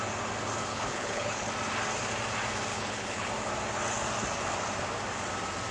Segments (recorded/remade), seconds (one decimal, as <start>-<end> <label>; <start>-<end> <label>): 0.0-0.7 recorded; 0.7-1.5 remade; 1.5-2.7 recorded; 2.7-3.3 remade; 3.3-5.7 recorded